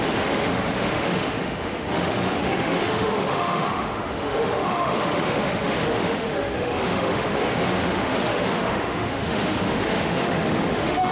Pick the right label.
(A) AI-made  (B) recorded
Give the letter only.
A